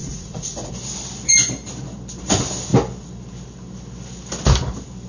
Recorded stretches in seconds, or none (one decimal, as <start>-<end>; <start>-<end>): 0.7-5.1